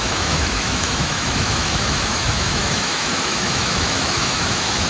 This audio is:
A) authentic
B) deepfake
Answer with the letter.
B